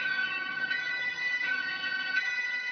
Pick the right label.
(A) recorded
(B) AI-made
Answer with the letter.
B